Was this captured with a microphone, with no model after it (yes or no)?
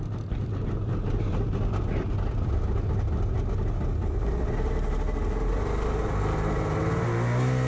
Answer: yes